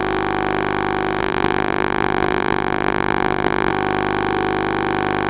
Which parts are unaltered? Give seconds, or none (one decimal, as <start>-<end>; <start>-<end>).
0.0-1.2; 3.7-5.3